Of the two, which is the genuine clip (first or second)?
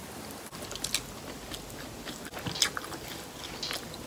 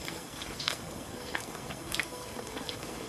first